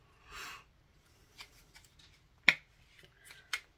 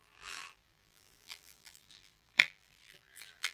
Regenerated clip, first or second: second